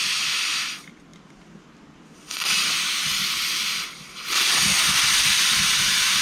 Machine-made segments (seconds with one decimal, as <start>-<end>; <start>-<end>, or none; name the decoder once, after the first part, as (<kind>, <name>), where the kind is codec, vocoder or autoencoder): none